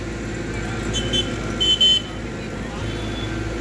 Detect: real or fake real